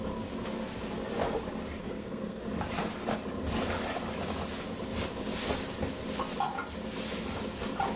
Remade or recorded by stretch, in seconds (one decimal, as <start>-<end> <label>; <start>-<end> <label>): 0.0-1.8 recorded; 1.8-2.4 remade; 2.4-8.0 recorded